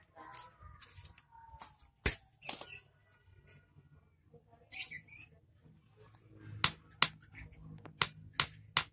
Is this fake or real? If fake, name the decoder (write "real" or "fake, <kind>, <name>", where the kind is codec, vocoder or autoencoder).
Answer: real